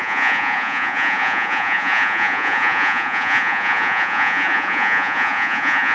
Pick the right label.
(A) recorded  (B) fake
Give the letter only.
B